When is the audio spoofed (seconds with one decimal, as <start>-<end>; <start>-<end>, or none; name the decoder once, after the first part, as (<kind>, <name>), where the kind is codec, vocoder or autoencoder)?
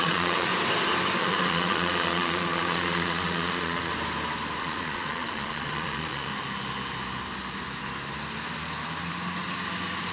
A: 0.0-0.5 (vocoder, Vocos); 1.2-3.9; 4.6-6.3